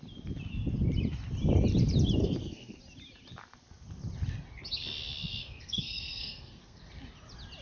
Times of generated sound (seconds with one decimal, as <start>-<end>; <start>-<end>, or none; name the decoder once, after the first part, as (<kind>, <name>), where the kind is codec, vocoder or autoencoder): 2.2-2.8 (codec, SNAC); 5.3-6.8